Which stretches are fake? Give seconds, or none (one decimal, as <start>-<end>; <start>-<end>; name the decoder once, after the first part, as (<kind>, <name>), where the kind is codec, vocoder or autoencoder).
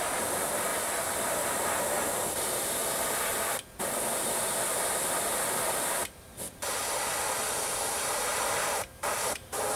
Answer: 0.0-0.7 (vocoder, BigVGAN v2); 1.3-2.8; 5.7-6.8; 7.6-9.8